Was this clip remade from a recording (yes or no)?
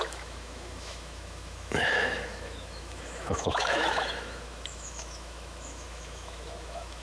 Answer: yes